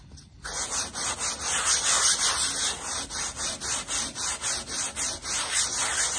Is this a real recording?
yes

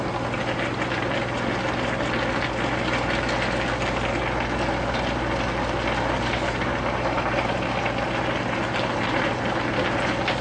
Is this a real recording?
yes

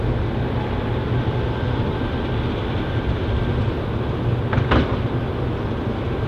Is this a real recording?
yes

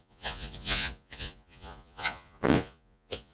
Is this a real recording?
no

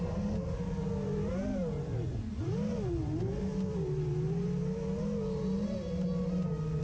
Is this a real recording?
yes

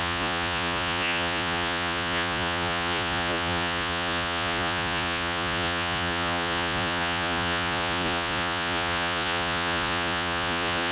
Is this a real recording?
no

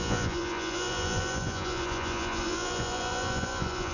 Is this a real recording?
no